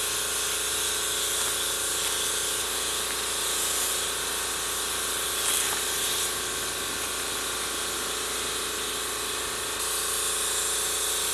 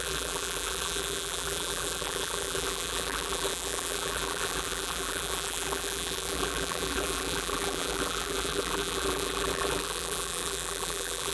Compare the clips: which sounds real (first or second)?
first